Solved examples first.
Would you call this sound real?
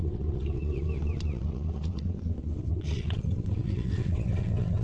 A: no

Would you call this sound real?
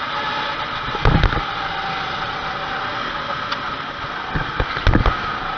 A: yes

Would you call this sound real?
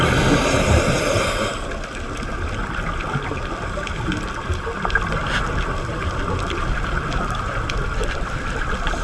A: yes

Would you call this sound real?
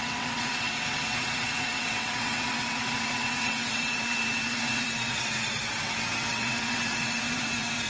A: no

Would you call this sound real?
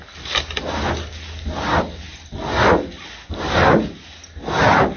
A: yes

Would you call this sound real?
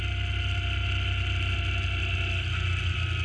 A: yes